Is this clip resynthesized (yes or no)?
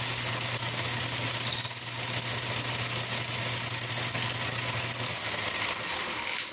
no